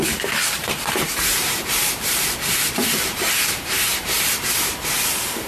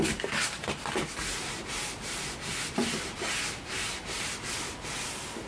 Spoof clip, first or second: first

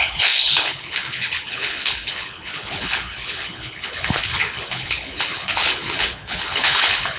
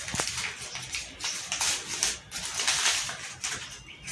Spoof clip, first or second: first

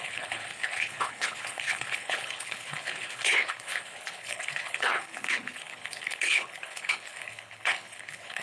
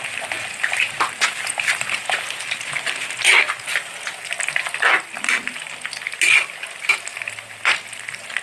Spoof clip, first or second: first